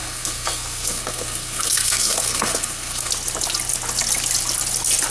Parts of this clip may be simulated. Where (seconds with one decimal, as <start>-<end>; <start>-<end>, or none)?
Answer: 0.0-3.1